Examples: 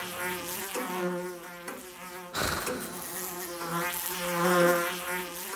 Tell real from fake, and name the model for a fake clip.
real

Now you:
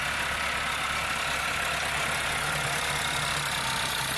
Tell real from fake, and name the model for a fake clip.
real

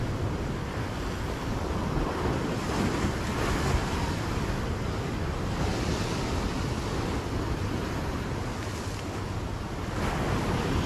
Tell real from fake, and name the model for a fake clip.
real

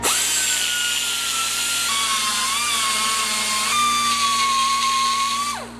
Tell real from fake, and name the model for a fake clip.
real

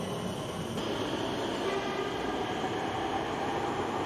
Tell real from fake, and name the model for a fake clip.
real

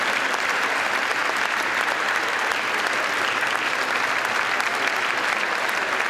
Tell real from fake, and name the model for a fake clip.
real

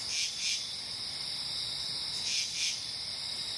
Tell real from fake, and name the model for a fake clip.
real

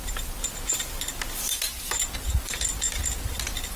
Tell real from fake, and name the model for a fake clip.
real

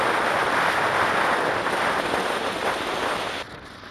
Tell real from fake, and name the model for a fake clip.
real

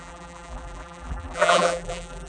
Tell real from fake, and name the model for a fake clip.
fake, vocoder, BigVGAN v2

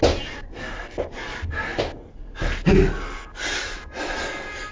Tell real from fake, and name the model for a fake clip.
real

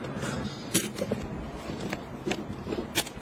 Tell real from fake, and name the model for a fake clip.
fake, vocoder, BigVGAN v2